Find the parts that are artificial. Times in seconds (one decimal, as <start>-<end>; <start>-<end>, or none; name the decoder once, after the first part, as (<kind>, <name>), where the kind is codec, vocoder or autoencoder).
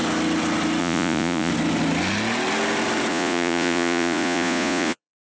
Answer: 0.8-1.5 (vocoder, Vocos); 3.1-5.4